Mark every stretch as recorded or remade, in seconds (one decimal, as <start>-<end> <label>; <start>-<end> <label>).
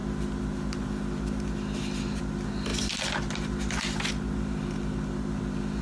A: 0.0-5.8 recorded